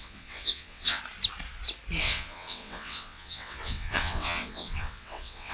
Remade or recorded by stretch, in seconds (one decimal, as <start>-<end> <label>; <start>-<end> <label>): 0.0-1.0 remade; 1.0-2.0 recorded; 2.0-5.5 remade

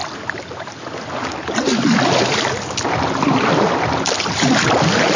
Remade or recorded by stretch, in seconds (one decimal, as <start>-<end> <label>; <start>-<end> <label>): 0.0-5.2 recorded